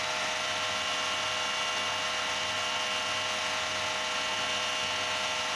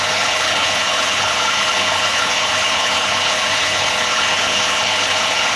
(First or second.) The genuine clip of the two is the first